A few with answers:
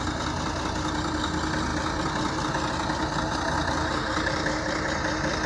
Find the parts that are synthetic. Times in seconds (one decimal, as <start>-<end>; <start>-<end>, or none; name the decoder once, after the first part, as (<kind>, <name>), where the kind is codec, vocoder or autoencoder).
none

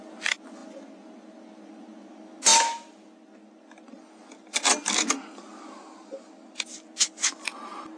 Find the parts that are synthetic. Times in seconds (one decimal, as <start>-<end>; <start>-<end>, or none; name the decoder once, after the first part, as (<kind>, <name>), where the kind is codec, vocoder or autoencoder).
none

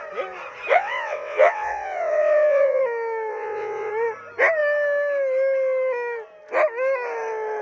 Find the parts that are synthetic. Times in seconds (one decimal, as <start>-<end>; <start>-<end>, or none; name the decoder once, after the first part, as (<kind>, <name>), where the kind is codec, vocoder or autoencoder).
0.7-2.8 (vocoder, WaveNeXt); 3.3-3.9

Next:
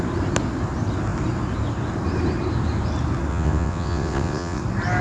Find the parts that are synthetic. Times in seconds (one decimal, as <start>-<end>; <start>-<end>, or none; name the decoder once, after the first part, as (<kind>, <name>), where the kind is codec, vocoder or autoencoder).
3.3-4.6 (vocoder, WaveNeXt)

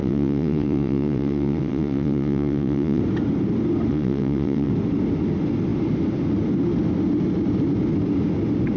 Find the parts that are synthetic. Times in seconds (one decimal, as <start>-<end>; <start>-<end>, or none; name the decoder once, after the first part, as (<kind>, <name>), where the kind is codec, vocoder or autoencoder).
0.0-3.0 (vocoder, WaveNeXt); 3.9-4.7